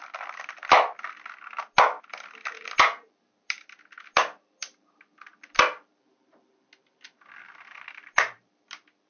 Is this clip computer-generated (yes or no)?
no